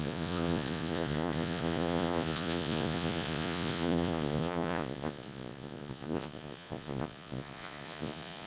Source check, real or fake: fake